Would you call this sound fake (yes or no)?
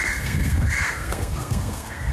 yes